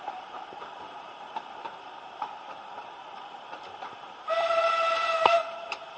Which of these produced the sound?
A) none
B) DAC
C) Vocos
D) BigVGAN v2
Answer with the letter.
D